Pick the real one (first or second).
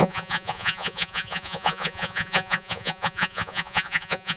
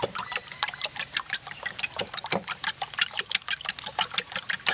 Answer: second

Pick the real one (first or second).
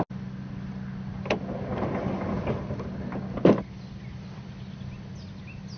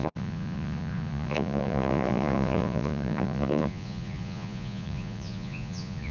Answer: first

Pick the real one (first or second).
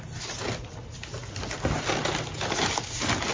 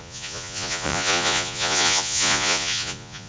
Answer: first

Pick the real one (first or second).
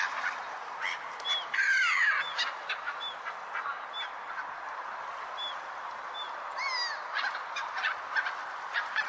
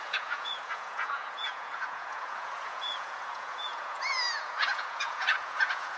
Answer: first